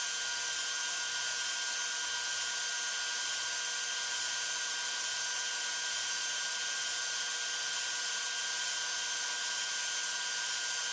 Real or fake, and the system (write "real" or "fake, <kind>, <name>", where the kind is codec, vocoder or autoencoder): real